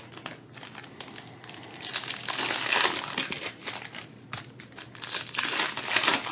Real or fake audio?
real